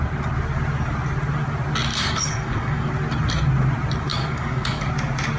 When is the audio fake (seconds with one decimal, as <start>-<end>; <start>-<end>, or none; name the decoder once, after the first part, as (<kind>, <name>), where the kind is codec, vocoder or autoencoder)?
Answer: 1.9-2.9 (codec, DAC); 4.1-4.9